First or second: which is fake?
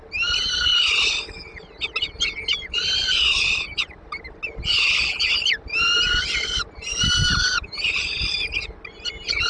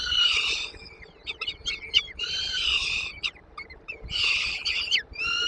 second